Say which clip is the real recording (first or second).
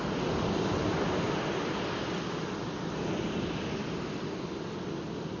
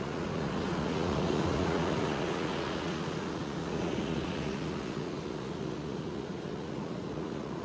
first